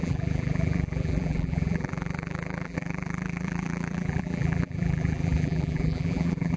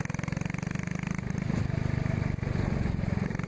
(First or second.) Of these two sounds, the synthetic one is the first